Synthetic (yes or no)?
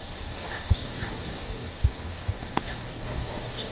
yes